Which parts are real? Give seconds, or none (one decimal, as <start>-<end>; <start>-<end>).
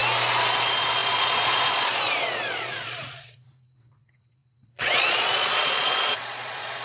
0.0-0.6